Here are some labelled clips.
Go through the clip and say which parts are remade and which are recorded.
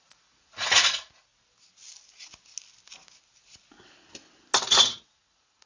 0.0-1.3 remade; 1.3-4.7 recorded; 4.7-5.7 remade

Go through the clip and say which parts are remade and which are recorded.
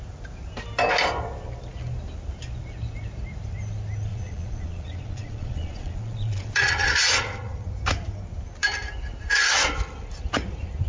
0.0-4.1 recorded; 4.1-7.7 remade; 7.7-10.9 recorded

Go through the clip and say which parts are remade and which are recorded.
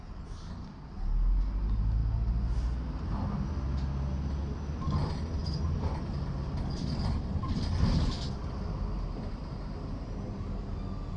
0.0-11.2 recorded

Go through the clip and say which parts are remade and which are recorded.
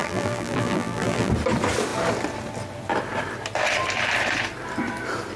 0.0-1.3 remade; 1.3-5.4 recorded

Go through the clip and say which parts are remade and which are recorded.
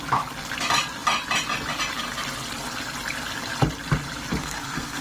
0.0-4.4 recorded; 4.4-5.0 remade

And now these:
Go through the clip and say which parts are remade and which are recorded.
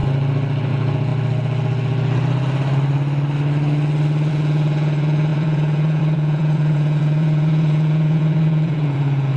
0.0-0.7 recorded; 0.7-1.1 remade; 1.1-4.3 recorded; 4.3-9.4 remade